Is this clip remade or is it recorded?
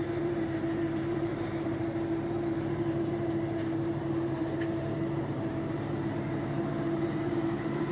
remade